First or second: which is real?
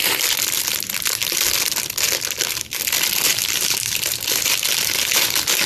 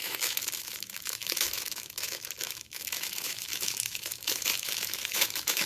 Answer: first